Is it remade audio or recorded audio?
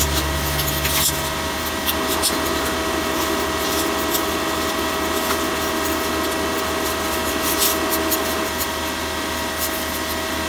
recorded